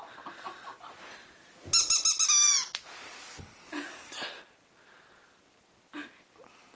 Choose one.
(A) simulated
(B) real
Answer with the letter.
B